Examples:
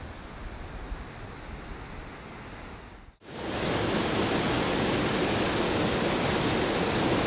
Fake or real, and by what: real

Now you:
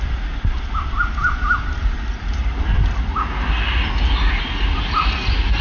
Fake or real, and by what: real